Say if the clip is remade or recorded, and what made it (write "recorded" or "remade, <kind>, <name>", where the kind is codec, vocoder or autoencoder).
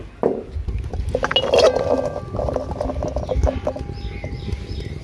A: recorded